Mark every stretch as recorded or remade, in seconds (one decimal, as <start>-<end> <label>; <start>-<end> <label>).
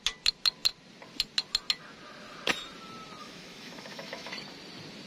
0.0-3.2 recorded; 3.2-4.3 remade; 4.3-5.1 recorded